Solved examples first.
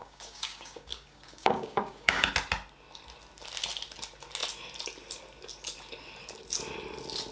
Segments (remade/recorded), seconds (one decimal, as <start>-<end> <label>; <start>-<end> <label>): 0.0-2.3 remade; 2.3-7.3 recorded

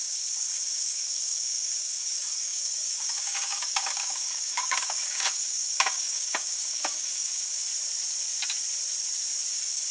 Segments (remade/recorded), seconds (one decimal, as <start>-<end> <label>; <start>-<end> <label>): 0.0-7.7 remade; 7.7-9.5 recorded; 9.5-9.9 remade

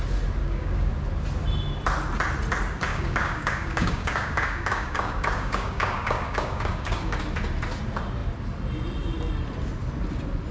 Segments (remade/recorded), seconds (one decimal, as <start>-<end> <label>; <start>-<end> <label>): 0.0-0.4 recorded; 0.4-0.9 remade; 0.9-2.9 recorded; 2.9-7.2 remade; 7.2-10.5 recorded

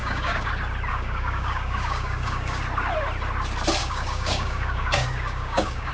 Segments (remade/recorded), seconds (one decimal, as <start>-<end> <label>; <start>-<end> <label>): 0.0-0.5 remade; 0.5-0.9 recorded; 0.9-2.6 remade; 2.6-3.8 recorded; 3.8-5.9 remade